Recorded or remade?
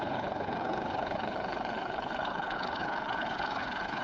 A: remade